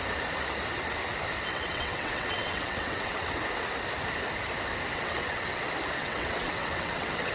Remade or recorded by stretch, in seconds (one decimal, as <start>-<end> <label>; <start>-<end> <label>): 0.0-1.5 recorded; 1.5-3.4 remade; 3.4-4.9 recorded; 4.9-5.6 remade; 5.6-6.0 recorded; 6.0-7.3 remade